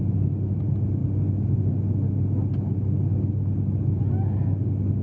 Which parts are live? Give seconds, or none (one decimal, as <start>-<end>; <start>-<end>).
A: 0.0-5.0